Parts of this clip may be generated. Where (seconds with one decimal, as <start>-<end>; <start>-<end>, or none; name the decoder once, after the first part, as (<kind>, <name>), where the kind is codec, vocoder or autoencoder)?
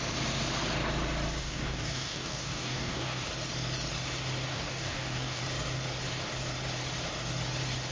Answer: 1.4-3.2 (codec, DAC); 4.5-5.4